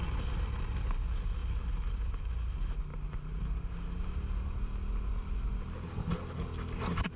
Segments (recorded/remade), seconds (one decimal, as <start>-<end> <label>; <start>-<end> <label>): 0.0-7.2 recorded